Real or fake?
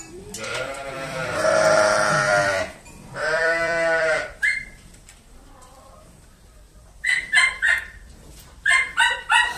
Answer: fake